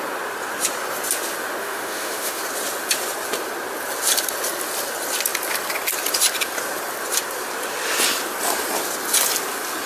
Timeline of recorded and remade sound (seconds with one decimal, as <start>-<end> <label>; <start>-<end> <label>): 0.0-1.6 recorded; 1.6-2.4 remade; 2.4-9.9 recorded